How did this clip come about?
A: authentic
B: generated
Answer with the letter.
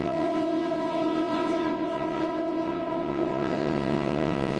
B